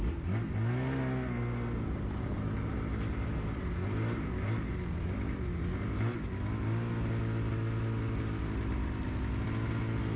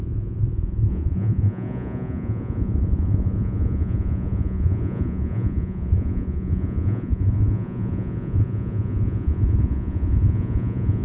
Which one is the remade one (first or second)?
second